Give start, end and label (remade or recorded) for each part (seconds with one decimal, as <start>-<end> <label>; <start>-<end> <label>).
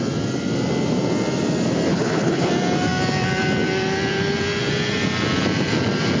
0.0-1.9 recorded; 1.9-2.5 remade; 2.5-6.2 recorded